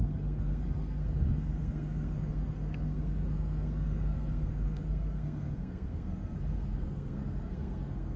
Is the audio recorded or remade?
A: remade